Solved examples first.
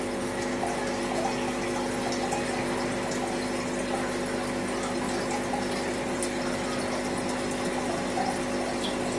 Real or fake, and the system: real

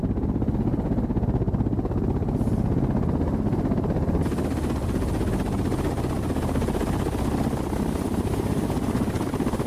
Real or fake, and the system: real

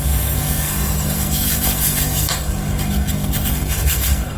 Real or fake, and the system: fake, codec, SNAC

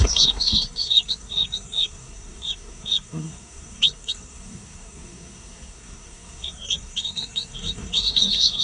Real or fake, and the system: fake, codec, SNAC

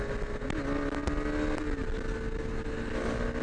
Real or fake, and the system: real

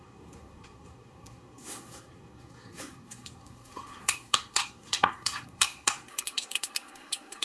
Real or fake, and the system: fake, codec, SNAC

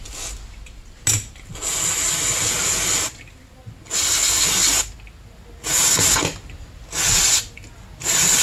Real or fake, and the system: real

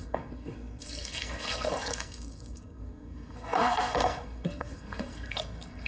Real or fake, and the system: fake, codec, SNAC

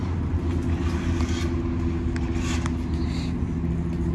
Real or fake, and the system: real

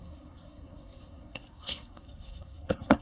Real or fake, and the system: fake, codec, SNAC